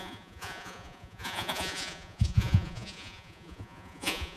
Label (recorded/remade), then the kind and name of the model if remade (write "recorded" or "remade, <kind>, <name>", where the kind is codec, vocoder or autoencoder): remade, vocoder, Vocos